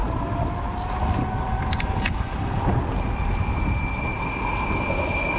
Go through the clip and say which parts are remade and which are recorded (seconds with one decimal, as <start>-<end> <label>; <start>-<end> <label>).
0.0-5.4 recorded